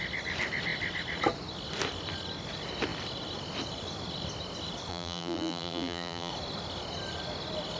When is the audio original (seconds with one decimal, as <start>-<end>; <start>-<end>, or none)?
0.0-4.9; 6.3-7.8